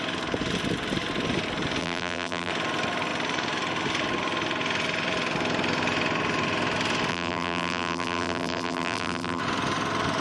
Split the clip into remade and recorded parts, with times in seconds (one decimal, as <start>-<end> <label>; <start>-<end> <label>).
0.0-1.8 recorded; 1.8-2.5 remade; 2.5-7.1 recorded; 7.1-9.4 remade; 9.4-10.2 recorded